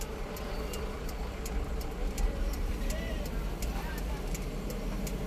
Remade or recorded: remade